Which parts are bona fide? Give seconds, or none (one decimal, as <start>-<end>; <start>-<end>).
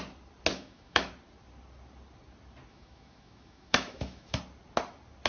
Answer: 0.0-0.5; 1.1-2.7; 4.4-5.3